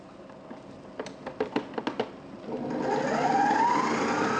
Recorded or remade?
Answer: recorded